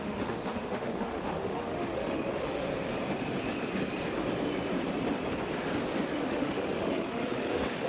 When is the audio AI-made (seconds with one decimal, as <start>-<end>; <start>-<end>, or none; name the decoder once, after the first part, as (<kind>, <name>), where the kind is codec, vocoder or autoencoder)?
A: 0.0-2.7 (autoencoder, DAC-VAE); 6.3-7.9